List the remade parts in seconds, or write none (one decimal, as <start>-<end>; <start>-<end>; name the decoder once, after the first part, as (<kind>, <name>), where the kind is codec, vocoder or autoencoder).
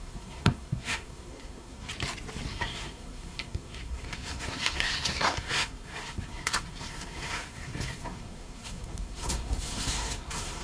0.0-1.9 (codec, SNAC); 2.5-10.6